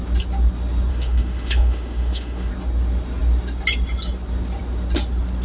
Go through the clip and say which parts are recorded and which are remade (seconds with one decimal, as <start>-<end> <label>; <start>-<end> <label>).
0.0-0.9 recorded; 0.9-2.5 remade; 2.5-5.4 recorded